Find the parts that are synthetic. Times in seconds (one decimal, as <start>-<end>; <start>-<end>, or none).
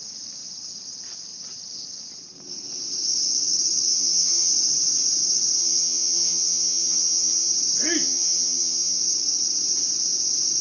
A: 3.9-4.5; 5.6-7.5; 8.0-9.0